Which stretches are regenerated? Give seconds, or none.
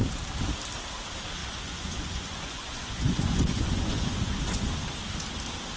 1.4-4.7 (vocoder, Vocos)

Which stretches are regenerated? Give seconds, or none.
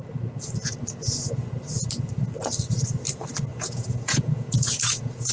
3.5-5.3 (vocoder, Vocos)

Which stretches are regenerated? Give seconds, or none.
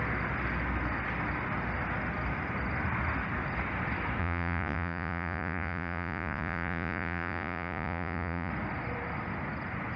4.2-8.5 (vocoder, Vocos)